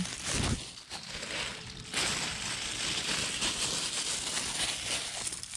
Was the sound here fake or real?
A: real